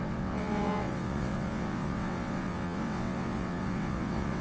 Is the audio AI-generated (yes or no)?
yes